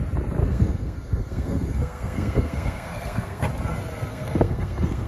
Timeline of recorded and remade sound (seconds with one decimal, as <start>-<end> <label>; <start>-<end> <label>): 0.0-0.4 recorded; 0.4-3.5 remade; 3.5-4.1 recorded; 4.1-5.1 remade